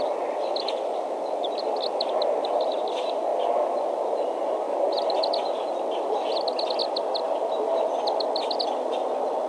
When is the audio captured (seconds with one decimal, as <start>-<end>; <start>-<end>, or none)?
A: 0.0-9.5